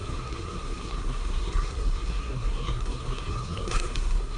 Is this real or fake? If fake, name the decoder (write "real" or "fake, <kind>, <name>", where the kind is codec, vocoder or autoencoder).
fake, codec, SNAC